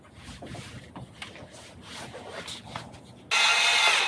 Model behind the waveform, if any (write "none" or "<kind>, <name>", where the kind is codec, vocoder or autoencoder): none